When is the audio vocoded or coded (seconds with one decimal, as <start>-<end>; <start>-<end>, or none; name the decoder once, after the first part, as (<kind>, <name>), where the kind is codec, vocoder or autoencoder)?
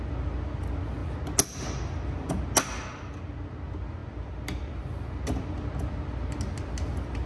none